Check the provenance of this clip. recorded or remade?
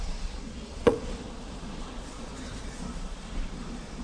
remade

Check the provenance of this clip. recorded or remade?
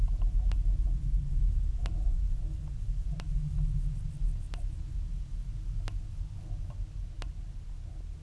recorded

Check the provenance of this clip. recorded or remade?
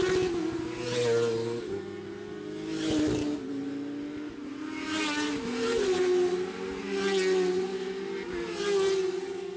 recorded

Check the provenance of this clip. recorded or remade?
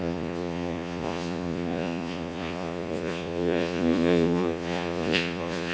remade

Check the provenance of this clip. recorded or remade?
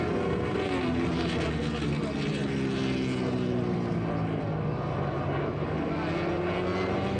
recorded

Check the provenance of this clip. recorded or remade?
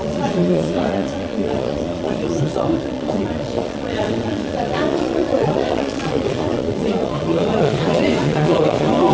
remade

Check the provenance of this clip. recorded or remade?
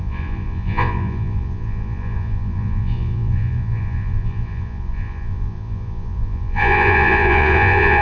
remade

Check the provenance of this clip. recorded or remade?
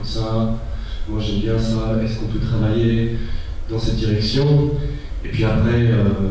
recorded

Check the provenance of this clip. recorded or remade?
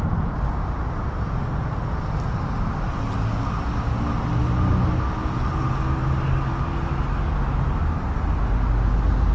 recorded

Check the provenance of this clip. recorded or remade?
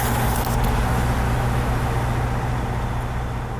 recorded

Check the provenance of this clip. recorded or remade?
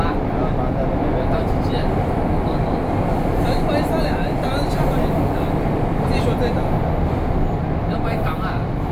recorded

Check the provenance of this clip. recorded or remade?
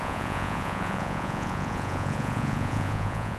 remade